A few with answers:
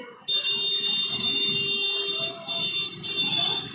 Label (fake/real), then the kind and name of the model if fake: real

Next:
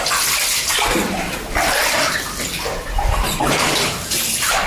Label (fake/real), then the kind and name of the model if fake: real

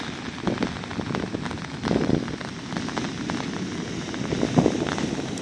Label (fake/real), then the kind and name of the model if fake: real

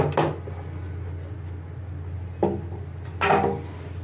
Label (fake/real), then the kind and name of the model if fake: real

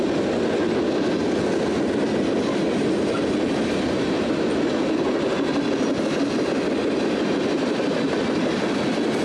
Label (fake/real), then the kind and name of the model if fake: real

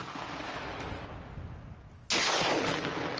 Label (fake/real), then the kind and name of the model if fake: real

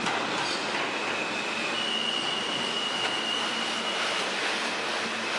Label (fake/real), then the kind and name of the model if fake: real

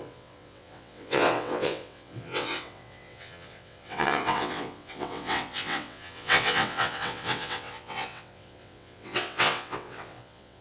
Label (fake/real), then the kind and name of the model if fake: fake, vocoder, WaveNeXt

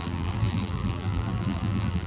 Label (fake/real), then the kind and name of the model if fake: fake, vocoder, BigVGAN v2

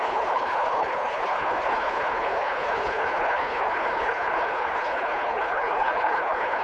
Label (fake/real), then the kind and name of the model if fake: fake, codec, HILCodec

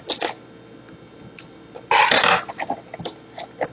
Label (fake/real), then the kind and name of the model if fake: real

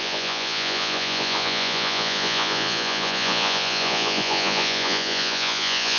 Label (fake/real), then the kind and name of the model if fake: fake, vocoder, Vocos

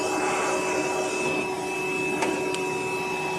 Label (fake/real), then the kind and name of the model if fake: real